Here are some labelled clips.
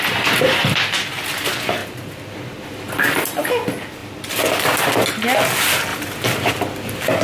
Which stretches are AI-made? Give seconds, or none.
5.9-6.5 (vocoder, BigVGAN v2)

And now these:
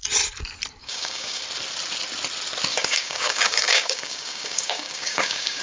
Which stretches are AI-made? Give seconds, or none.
0.8-1.4 (codec, DAC); 2.7-5.6

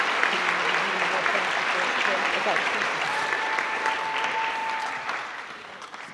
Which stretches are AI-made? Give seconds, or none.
0.0-6.1 (vocoder, BigVGAN v2)

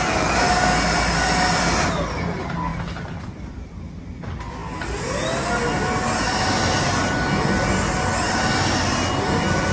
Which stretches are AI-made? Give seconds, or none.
none

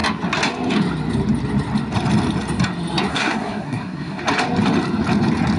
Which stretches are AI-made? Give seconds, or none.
3.1-4.2 (codec, SNAC)

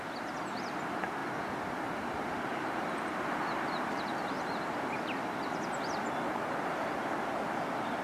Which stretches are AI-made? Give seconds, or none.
4.1-4.9 (vocoder, BigVGAN v2)

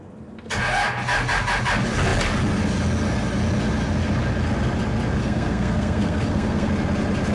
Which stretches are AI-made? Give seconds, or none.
5.2-6.7 (codec, SNAC)